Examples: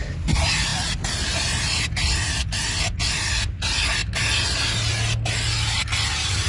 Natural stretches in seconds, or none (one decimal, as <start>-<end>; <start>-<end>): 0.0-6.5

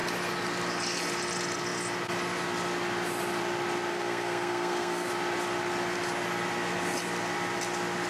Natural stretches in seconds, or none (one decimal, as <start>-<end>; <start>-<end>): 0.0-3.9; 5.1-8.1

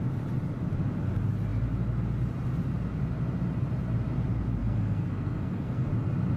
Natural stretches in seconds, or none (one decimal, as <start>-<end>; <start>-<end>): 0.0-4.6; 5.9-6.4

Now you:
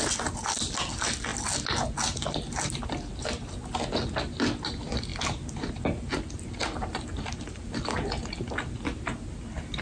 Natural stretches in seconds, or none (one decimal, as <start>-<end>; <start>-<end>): 0.0-9.8

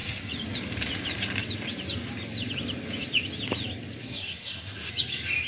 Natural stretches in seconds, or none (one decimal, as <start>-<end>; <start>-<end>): 0.0-4.0; 4.9-5.5